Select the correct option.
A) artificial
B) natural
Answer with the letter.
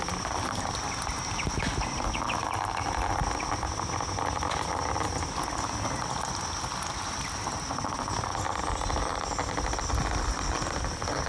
B